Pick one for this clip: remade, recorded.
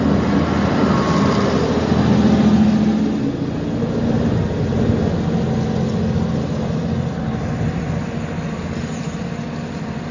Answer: recorded